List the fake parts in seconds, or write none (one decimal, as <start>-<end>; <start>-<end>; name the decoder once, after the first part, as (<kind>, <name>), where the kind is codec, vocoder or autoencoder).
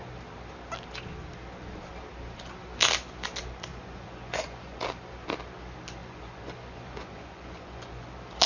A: 3.7-4.8 (vocoder, Vocos); 6.0-8.1